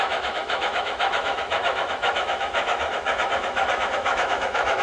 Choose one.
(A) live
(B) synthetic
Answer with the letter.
B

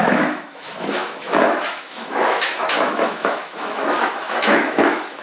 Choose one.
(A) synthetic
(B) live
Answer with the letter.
A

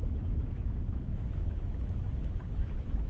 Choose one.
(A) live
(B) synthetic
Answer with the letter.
B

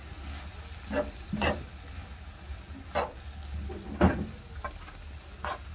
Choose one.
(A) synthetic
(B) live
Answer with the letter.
B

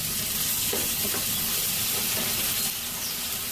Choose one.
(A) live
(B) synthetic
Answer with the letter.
A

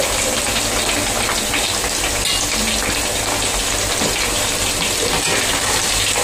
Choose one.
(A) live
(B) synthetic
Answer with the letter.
A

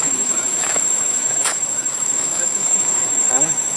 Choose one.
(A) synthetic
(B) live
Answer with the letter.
A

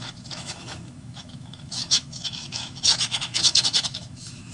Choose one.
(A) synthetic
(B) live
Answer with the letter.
A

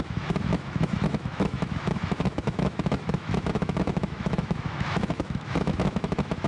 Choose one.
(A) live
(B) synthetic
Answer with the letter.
B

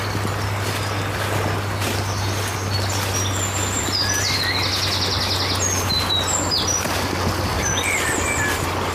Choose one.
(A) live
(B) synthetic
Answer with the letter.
A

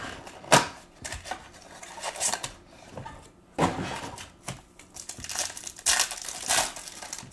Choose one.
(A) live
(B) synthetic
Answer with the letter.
A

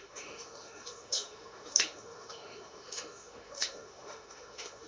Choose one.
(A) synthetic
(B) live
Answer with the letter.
A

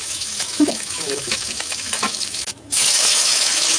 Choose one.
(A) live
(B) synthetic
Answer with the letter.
B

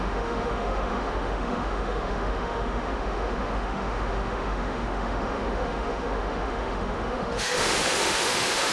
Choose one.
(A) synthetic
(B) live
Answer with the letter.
A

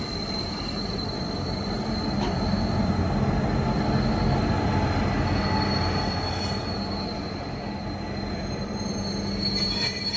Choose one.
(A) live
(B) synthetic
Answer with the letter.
A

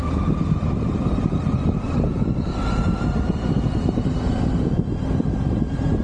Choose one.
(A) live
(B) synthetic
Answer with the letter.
A